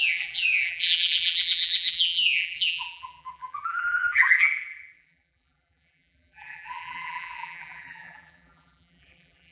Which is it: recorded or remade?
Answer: remade